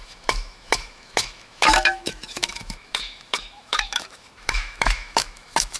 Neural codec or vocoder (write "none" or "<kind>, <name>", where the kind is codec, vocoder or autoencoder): autoencoder, DAC-VAE